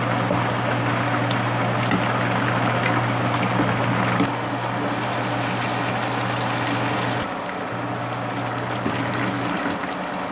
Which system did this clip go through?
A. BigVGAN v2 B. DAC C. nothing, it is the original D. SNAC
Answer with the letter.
C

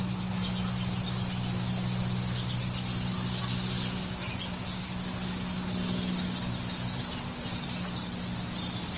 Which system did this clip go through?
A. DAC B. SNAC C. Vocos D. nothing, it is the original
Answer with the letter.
D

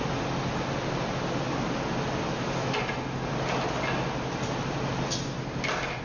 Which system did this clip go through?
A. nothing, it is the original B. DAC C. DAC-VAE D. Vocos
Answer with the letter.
A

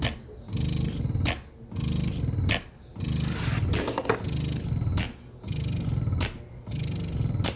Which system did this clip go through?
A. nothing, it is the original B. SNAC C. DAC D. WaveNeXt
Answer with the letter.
A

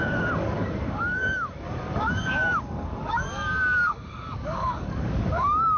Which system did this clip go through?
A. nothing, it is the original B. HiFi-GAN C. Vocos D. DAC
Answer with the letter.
D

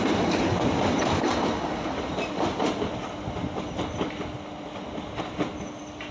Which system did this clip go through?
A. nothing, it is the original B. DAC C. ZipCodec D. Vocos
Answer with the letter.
A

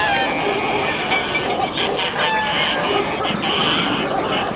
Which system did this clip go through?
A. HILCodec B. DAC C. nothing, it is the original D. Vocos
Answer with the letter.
C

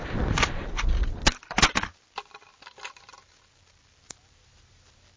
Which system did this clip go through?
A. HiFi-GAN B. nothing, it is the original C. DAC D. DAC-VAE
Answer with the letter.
B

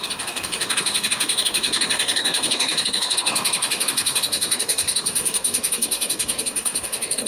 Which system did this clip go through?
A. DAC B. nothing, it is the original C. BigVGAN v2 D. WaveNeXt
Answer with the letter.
A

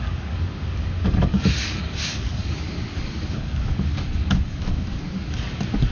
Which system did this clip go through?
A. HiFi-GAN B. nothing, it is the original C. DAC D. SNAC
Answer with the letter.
C